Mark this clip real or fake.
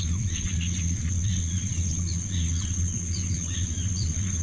fake